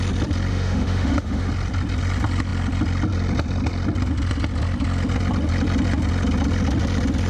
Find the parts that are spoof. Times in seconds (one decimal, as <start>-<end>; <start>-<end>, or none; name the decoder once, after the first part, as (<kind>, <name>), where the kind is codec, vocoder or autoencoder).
0.5-1.5 (autoencoder, DAC-VAE)